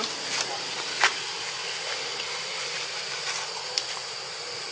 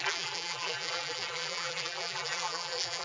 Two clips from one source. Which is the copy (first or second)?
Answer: second